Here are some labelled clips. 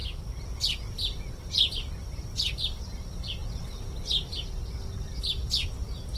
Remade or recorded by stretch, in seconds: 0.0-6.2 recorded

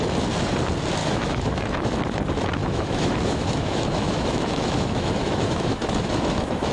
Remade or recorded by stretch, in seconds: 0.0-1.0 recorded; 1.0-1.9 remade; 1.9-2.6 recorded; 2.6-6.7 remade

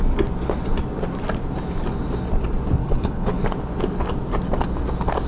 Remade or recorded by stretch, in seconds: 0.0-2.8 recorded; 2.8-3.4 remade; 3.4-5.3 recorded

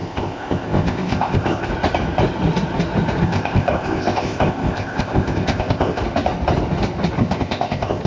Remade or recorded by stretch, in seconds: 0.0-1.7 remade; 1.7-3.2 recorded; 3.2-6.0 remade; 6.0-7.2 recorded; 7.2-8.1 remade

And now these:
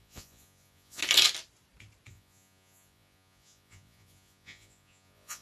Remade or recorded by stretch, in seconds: 0.0-1.0 remade; 1.0-2.1 recorded; 2.1-5.4 remade

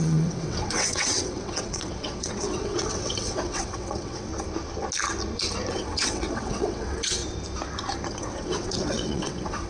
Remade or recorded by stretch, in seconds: 0.0-4.3 remade; 4.3-5.7 recorded; 5.7-7.2 remade; 7.2-8.1 recorded; 8.1-9.7 remade

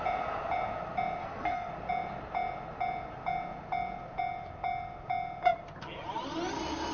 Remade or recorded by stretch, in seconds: 0.0-1.2 recorded; 1.2-1.7 remade; 1.7-6.9 recorded

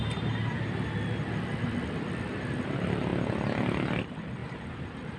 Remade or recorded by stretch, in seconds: 0.0-5.2 recorded